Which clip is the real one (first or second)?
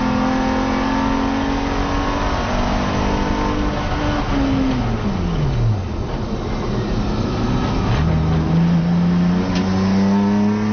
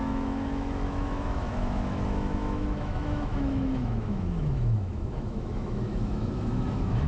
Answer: first